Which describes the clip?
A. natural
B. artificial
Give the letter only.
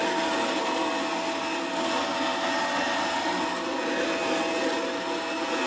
A